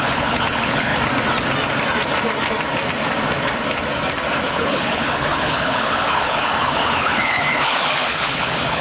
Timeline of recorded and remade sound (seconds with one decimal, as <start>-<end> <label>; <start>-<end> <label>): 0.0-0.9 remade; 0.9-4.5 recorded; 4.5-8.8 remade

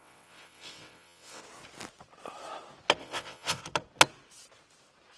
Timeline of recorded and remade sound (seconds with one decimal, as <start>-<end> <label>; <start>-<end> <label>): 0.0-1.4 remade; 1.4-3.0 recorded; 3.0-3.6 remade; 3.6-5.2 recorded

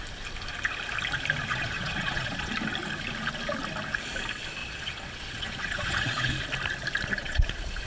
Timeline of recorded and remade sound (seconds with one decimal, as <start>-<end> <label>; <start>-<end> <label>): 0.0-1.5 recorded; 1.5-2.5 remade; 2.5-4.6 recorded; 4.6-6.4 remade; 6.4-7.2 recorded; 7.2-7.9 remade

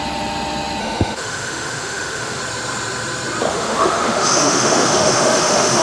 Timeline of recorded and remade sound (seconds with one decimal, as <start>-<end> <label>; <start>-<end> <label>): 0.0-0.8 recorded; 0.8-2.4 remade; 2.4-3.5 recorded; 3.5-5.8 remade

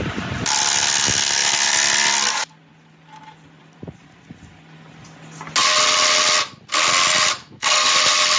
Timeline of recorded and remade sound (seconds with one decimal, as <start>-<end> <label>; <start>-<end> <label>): 0.0-7.4 recorded; 7.4-7.9 remade; 7.9-8.4 recorded